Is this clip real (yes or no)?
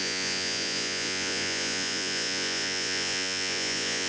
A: no